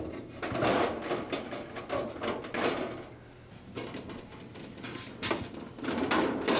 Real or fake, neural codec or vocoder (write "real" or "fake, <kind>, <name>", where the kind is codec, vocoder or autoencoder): real